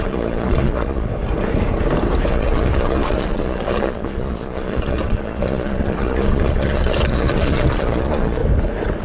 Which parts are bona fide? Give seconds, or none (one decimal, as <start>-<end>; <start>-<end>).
1.1-2.3; 8.4-9.0